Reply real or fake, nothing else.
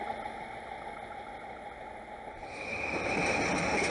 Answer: real